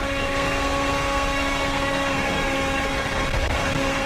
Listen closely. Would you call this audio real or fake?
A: fake